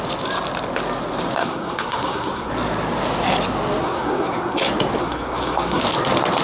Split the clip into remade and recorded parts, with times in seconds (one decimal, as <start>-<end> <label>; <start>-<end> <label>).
0.0-1.4 recorded; 1.4-2.5 remade; 2.5-3.8 recorded; 3.8-4.6 remade; 4.6-5.0 recorded; 5.0-5.8 remade; 5.8-6.4 recorded